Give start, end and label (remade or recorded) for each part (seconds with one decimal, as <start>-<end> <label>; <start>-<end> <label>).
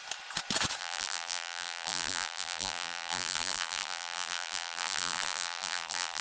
0.0-0.8 recorded; 0.8-6.2 remade